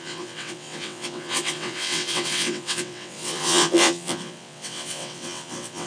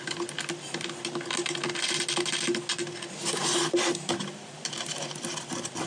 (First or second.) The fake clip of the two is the first